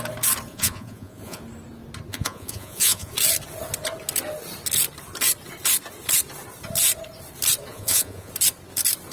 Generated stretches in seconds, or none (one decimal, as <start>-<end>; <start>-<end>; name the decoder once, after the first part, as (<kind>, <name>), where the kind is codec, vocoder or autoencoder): 0.5-1.4 (vocoder, Vocos); 2.1-3.1; 7.7-8.3